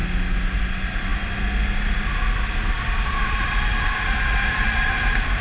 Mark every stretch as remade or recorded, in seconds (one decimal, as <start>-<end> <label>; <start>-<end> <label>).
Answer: 0.0-0.6 recorded; 0.6-1.1 remade; 1.1-2.8 recorded; 2.8-5.4 remade